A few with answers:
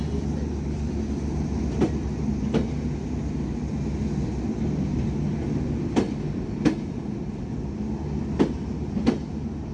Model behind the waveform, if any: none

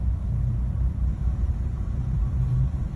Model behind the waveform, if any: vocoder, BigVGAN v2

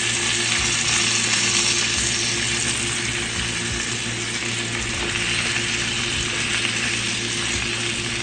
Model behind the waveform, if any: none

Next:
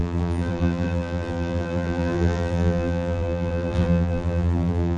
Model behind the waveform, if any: vocoder, BigVGAN v2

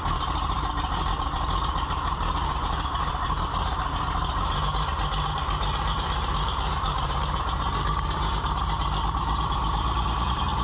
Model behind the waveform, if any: vocoder, BigVGAN v2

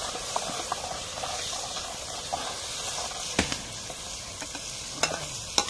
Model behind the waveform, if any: none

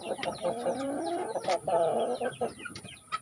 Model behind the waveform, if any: vocoder, BigVGAN v2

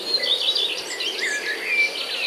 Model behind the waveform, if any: none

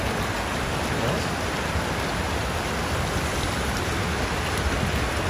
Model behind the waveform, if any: none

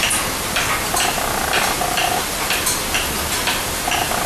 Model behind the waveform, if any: none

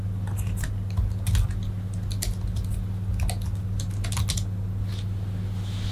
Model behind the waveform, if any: none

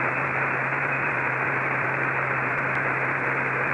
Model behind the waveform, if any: vocoder, BigVGAN v2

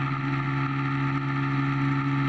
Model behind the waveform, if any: none